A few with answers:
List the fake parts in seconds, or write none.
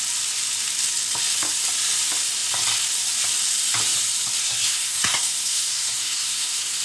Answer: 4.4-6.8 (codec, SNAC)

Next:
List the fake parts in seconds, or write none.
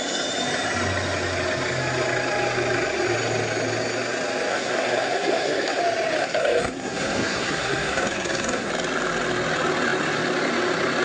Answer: 4.5-5.8 (codec, SNAC); 6.2-8.7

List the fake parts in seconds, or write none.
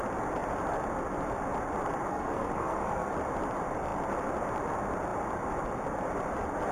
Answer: 2.1-3.1 (codec, SNAC)